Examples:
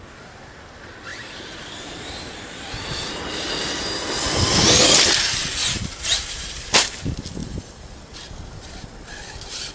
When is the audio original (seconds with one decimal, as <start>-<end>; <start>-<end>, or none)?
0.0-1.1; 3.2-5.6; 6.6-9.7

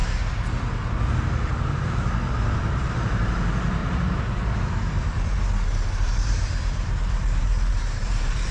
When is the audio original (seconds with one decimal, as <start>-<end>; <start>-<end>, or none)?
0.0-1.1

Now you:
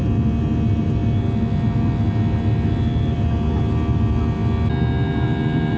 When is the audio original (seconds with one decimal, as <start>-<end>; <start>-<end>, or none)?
0.0-5.8

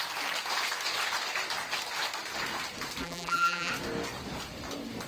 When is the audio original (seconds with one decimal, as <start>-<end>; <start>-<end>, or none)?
0.0-3.0; 3.7-5.1